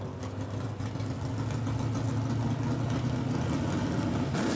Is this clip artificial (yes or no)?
no